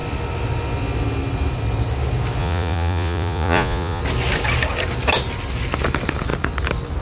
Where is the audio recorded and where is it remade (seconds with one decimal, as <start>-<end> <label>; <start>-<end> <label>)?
0.0-2.4 recorded; 2.4-4.0 remade; 4.0-7.0 recorded